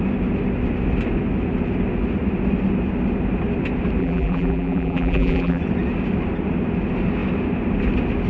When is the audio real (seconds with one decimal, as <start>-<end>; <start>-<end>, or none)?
0.0-4.0; 5.6-8.3